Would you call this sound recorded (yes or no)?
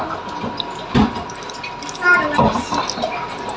yes